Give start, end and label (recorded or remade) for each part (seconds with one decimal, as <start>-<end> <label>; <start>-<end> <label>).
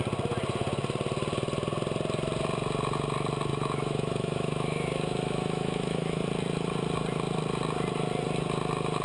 0.0-3.5 recorded; 3.5-6.2 remade; 6.2-9.0 recorded